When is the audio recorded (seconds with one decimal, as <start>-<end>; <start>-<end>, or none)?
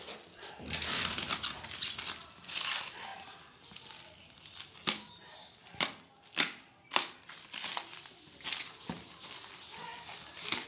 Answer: 0.0-10.7